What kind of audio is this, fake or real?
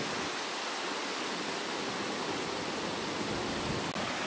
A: real